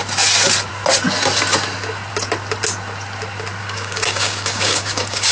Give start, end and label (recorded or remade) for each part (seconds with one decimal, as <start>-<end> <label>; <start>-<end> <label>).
0.0-3.6 recorded; 3.6-5.3 remade